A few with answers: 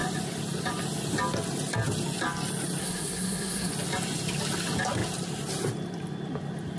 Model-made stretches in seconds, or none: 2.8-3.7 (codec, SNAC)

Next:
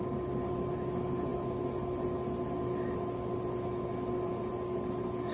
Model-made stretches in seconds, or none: none

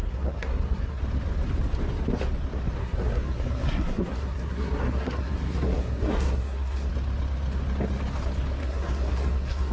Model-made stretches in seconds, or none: 0.0-1.0 (codec, SNAC); 2.8-6.9; 8.6-9.7